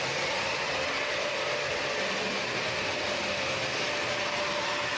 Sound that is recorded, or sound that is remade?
recorded